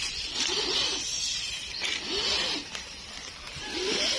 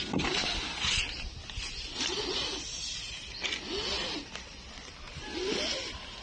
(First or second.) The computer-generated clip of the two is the first